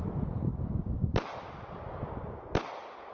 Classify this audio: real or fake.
real